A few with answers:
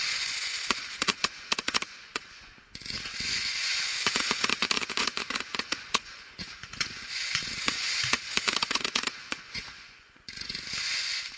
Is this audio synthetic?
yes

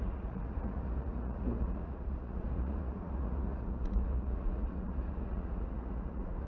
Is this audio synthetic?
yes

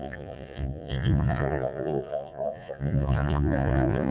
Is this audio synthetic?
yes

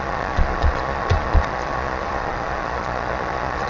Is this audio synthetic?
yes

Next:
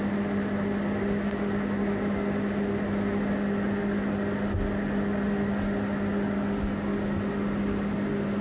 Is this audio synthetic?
no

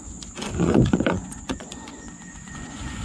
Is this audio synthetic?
yes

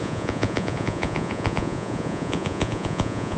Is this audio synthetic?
yes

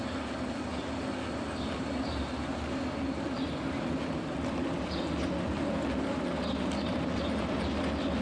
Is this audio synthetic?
no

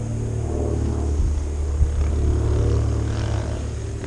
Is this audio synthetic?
no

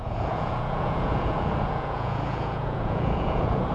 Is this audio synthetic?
yes